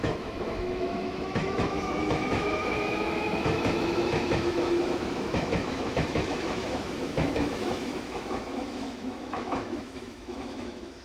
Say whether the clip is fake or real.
fake